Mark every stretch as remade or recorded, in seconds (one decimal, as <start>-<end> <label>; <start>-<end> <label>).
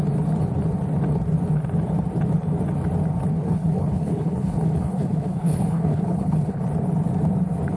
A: 0.0-3.3 recorded; 3.3-6.6 remade; 6.6-7.8 recorded